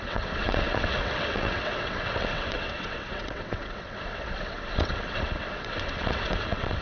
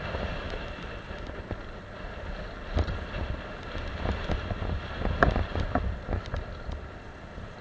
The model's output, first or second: first